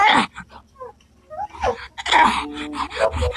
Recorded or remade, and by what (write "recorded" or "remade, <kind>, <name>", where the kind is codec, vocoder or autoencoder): recorded